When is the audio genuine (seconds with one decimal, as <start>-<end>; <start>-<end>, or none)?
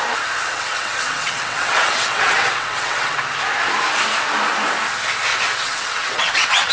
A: 0.0-0.5; 3.2-5.3